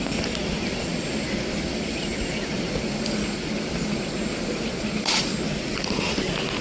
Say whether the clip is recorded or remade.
recorded